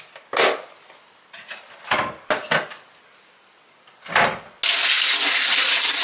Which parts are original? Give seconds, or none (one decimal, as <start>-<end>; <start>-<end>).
0.0-6.0